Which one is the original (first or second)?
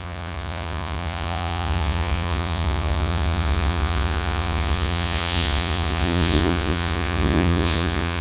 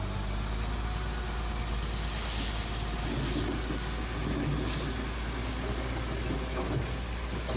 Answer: second